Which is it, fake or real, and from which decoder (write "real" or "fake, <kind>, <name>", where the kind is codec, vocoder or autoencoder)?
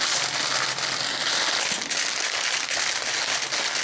real